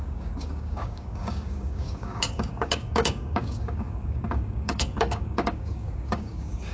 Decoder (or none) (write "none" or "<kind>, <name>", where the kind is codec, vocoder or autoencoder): codec, DAC